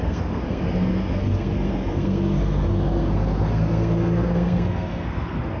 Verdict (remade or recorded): remade